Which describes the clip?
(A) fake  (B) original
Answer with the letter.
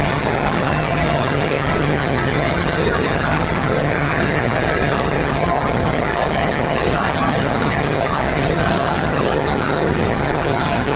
A